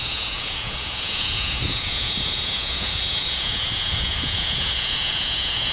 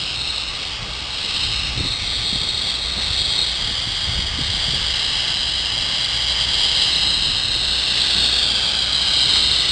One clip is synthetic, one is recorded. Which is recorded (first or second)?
second